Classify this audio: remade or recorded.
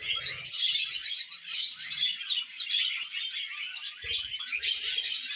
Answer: recorded